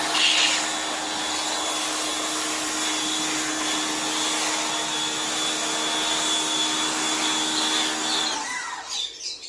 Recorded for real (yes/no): yes